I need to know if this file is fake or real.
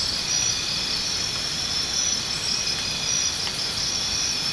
real